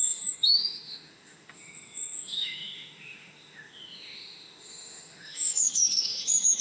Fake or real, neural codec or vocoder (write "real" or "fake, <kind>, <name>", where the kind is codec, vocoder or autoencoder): fake, autoencoder, DAC-VAE